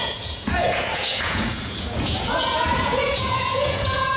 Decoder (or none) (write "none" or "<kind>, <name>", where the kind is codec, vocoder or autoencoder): vocoder, Vocos